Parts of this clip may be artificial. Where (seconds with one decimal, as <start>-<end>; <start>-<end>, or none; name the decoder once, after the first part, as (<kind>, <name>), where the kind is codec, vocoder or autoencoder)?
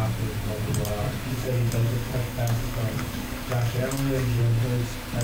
1.3-4.4 (codec, DAC)